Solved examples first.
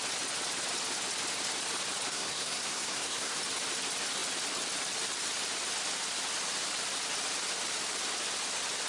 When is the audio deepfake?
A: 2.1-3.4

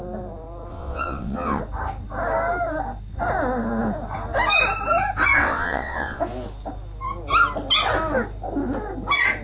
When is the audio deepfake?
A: 0.7-1.6; 5.4-6.2